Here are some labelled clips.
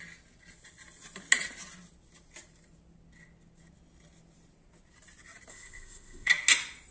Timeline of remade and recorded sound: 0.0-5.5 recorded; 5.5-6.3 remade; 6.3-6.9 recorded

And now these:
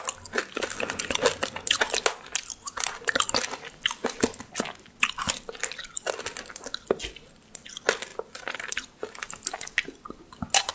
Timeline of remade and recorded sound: 0.0-10.7 recorded

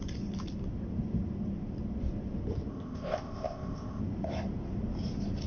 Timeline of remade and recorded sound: 0.0-2.7 recorded; 2.7-4.0 remade; 4.0-5.5 recorded